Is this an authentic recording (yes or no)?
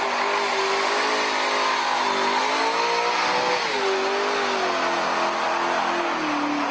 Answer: yes